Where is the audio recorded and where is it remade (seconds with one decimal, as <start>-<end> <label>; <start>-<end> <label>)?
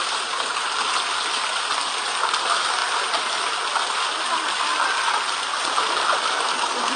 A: 0.0-7.0 recorded